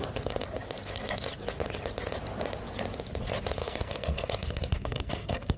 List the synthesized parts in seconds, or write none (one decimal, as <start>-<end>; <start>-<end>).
3.6-5.6